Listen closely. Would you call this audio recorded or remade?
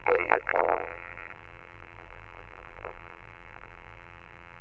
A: remade